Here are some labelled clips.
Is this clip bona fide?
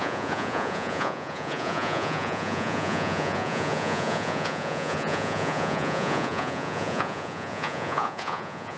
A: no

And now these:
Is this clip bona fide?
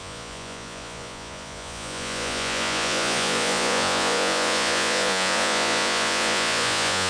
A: no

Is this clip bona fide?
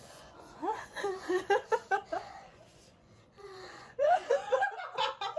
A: no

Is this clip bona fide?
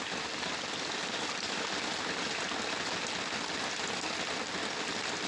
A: yes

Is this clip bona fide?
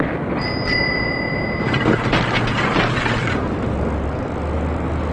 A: yes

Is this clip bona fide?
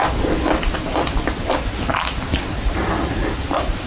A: yes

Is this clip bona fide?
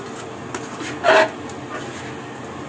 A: yes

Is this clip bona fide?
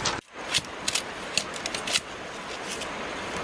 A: yes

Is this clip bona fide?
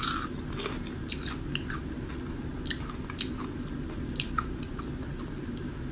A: yes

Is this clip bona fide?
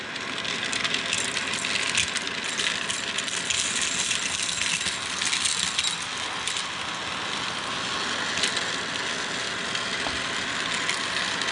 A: yes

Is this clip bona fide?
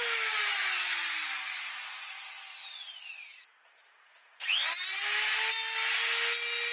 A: yes